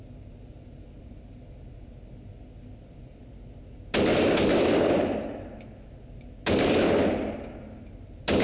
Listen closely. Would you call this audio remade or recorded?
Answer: recorded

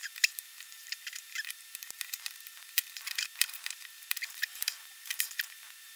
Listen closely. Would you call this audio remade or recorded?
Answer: remade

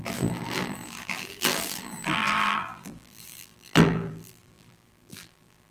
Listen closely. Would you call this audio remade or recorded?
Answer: remade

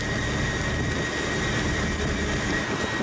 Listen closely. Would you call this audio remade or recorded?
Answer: remade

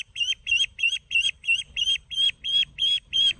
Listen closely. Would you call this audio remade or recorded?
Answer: remade